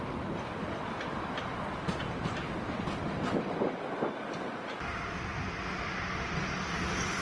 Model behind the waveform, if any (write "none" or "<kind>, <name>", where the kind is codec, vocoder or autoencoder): none